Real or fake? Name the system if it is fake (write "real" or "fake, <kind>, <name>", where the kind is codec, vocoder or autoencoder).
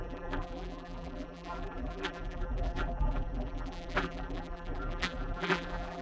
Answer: fake, vocoder, BigVGAN v2